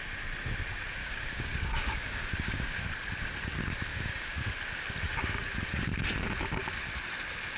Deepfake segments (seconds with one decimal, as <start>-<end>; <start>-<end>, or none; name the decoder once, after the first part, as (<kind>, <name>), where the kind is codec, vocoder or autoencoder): 1.0-2.9 (codec, DAC); 3.9-4.5